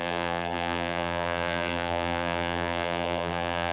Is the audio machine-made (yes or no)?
yes